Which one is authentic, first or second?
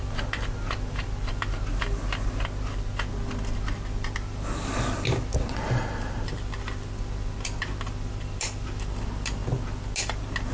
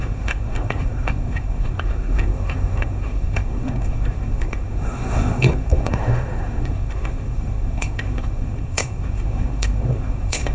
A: first